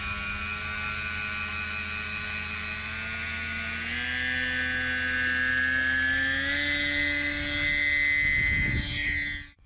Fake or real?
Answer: real